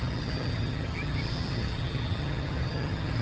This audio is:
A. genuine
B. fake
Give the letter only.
B